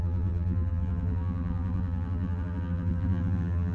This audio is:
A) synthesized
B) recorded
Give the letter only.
A